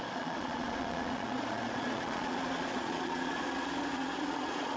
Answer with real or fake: fake